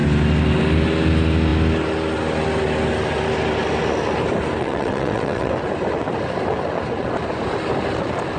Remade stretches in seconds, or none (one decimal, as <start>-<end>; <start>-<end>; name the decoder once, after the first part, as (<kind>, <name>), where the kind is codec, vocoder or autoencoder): 4.6-5.5 (vocoder, WaveNeXt)